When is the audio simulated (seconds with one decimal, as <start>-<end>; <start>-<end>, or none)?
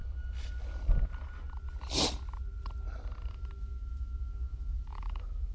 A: 3.3-5.5